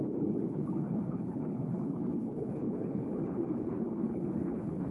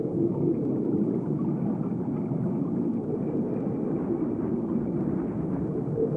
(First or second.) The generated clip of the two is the first